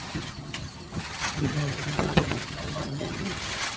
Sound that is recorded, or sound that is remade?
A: remade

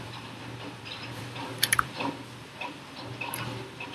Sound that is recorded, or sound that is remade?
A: remade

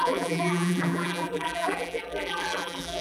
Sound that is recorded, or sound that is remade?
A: remade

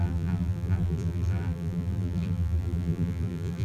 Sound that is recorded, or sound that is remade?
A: remade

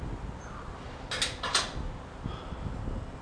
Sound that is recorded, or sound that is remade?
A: recorded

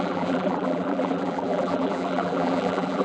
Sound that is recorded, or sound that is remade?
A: remade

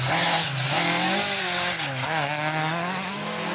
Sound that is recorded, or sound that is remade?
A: recorded